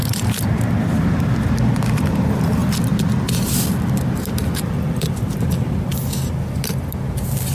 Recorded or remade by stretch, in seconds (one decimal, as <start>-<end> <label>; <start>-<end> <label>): 0.0-2.6 remade; 2.6-4.8 recorded; 4.8-5.9 remade; 5.9-7.1 recorded; 7.1-7.5 remade